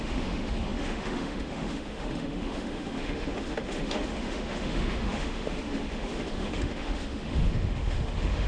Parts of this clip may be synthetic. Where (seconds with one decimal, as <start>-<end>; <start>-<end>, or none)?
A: 0.0-8.5